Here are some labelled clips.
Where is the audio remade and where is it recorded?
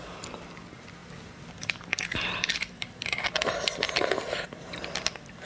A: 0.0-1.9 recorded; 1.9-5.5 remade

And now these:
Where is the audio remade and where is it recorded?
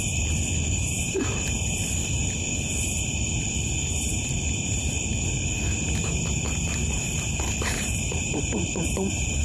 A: 0.0-2.0 remade; 2.0-3.8 recorded; 3.8-5.7 remade; 5.7-6.3 recorded; 6.3-9.4 remade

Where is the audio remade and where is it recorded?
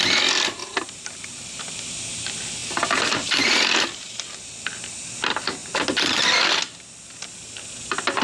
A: 0.0-0.6 recorded; 0.6-1.6 remade; 1.6-8.2 recorded